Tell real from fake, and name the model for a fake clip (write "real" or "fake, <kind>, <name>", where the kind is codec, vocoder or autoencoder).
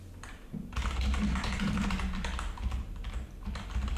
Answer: real